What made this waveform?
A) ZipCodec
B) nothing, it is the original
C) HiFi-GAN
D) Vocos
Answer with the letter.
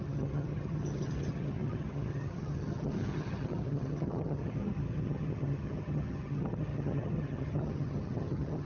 C